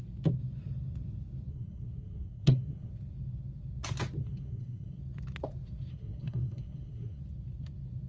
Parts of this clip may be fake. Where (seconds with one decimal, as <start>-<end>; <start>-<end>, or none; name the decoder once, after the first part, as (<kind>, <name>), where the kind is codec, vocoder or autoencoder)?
1.5-2.9 (codec, SNAC); 4.2-5.0; 5.9-7.2